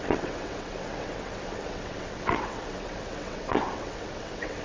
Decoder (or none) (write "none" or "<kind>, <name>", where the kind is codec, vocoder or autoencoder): vocoder, WaveNeXt